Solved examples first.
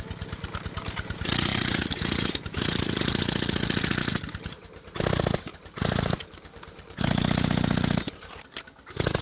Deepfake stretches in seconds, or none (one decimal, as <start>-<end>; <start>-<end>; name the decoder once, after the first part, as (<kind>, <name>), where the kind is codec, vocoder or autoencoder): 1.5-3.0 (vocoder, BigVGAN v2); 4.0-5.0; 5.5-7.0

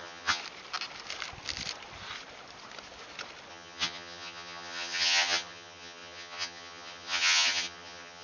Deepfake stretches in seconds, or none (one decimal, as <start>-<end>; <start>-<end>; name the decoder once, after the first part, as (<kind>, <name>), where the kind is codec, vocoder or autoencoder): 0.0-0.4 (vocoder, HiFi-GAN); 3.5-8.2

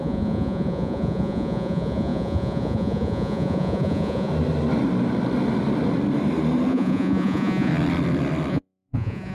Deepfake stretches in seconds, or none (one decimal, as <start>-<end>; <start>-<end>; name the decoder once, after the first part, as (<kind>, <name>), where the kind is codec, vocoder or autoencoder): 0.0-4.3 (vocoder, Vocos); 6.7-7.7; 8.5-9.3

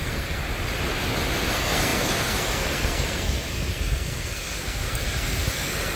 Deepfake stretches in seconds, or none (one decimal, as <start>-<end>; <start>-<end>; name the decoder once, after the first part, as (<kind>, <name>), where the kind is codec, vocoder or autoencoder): 0.0-0.4 (codec, SNAC); 1.5-6.0

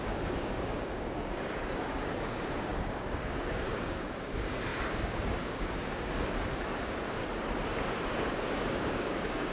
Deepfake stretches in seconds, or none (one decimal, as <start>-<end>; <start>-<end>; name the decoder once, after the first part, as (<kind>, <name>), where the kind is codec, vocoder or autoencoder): 0.0-7.2 (codec, DAC); 8.1-9.5